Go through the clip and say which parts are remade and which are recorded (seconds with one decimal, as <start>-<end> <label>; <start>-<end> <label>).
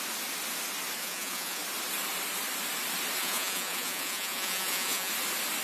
0.0-1.0 recorded; 1.0-1.6 remade; 1.6-3.2 recorded; 3.2-5.1 remade; 5.1-5.6 recorded